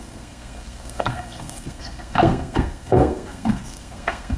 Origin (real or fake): fake